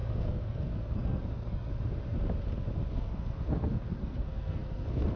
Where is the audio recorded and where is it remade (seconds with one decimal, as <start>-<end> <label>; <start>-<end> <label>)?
0.0-1.7 remade; 1.7-2.9 recorded; 2.9-5.2 remade